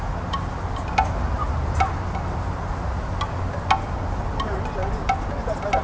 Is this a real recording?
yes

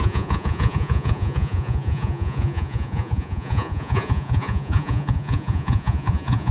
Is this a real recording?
no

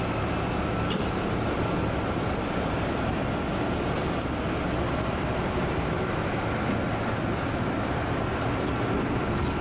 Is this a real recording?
yes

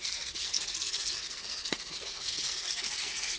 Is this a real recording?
no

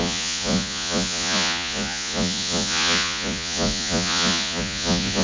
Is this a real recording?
no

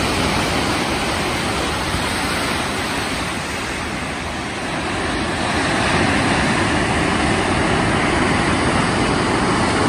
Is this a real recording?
yes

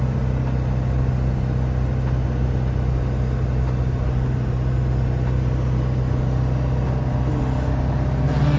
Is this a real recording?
yes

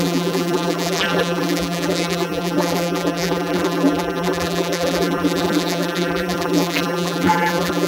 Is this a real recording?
no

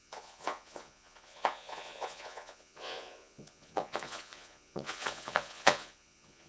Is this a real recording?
no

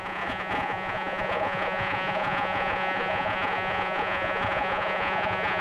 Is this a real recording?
no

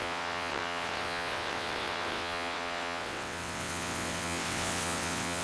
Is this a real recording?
no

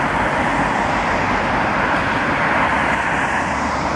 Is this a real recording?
yes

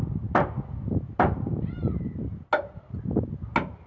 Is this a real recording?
yes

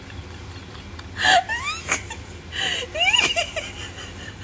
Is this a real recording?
yes